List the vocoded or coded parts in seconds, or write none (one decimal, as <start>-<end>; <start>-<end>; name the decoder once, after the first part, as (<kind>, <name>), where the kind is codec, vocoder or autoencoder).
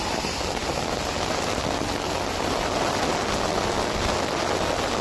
none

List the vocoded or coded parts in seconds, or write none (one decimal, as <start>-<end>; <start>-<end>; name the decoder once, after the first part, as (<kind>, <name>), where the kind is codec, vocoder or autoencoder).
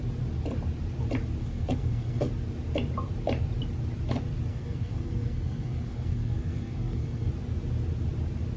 1.4-2.3 (codec, SNAC); 4.5-7.3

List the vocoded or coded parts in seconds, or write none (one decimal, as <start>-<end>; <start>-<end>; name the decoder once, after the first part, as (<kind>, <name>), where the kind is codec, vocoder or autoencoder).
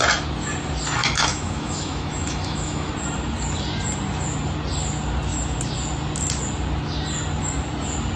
1.0-2.9 (autoencoder, DAC-VAE)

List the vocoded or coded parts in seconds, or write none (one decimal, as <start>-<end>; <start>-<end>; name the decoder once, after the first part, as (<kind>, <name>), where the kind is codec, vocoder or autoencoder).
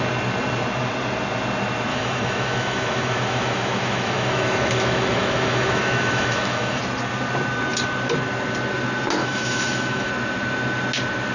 1.9-6.8 (autoencoder, DAC-VAE); 9.2-10.1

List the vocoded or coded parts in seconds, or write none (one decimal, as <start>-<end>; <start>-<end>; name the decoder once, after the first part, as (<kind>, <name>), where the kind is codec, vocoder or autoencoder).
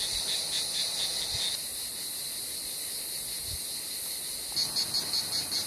none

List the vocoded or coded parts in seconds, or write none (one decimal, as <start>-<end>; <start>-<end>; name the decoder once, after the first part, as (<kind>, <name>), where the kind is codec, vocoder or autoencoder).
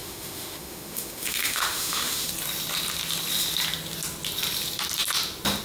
0.0-2.3 (autoencoder, DAC-VAE)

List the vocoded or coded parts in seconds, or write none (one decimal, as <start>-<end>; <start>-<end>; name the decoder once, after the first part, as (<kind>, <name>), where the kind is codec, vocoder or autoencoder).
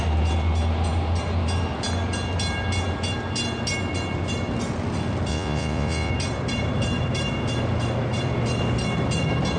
5.3-6.1 (vocoder, Vocos)